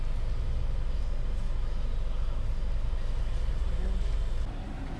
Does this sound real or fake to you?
real